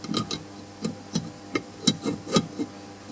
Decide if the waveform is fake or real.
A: real